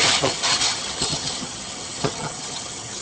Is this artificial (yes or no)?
yes